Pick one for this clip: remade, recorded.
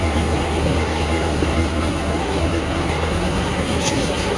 remade